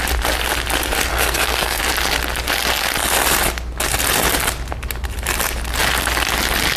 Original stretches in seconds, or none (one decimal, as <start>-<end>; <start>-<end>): 0.0-1.1; 1.8-6.8